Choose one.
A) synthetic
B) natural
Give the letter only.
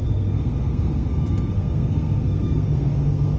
A